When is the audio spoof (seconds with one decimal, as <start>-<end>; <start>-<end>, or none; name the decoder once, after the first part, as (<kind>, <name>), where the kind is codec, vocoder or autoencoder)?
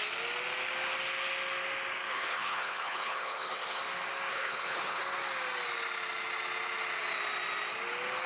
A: 2.1-3.8 (codec, HILCodec); 4.3-5.0